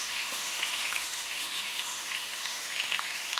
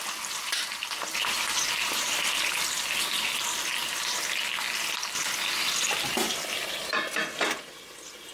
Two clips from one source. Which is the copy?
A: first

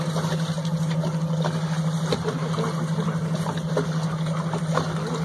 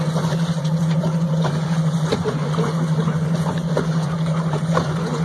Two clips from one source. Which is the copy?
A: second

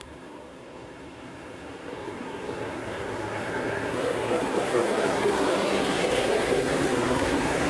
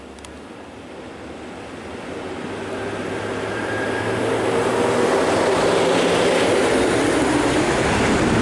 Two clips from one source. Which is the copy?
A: first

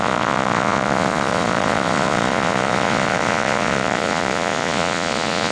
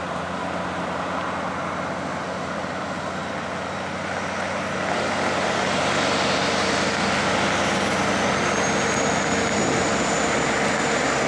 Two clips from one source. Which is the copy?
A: first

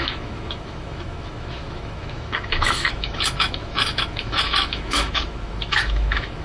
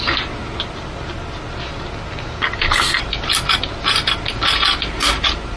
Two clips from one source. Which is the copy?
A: first